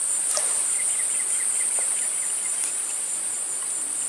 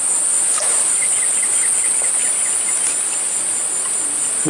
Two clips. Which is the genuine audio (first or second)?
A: second